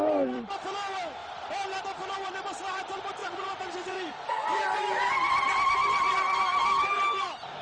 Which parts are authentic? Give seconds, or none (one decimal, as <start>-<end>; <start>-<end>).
1.2-1.8

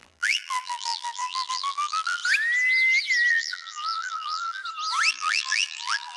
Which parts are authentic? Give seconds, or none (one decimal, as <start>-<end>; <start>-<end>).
2.2-3.3; 4.6-5.1